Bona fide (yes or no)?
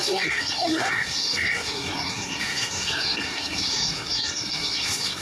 no